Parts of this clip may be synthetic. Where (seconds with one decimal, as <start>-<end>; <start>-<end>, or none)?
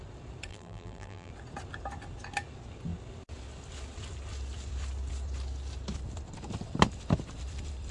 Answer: 0.5-1.3